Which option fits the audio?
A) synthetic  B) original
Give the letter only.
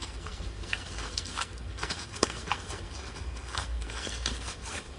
A